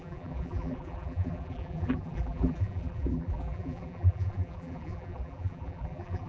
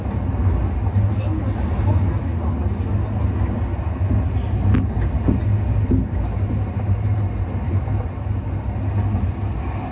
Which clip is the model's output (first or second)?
first